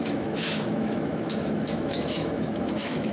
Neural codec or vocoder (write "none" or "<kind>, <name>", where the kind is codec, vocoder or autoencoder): autoencoder, DAC-VAE